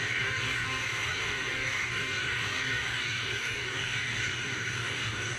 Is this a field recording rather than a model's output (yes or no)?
no